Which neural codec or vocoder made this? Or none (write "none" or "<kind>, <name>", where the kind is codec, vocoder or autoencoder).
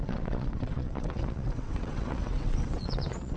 vocoder, WaveNeXt